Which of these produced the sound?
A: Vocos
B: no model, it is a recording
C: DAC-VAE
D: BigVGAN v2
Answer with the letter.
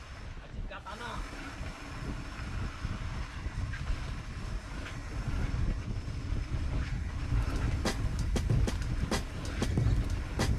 B